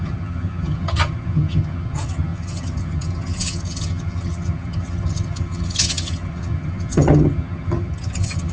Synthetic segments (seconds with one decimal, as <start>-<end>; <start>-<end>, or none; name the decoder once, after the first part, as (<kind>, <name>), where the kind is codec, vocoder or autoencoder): 0.0-8.5 (vocoder, HiFi-GAN)